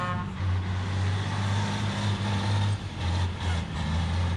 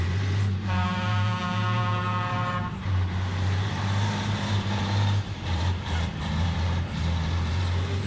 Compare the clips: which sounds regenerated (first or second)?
second